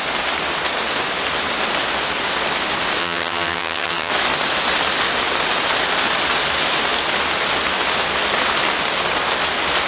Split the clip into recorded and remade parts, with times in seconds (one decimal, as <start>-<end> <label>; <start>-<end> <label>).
0.0-3.0 recorded; 3.0-4.1 remade; 4.1-9.9 recorded